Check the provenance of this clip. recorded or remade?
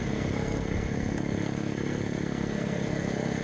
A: remade